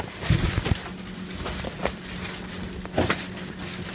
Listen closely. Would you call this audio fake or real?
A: real